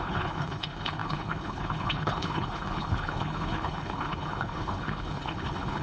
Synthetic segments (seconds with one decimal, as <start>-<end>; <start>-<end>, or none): 0.0-5.8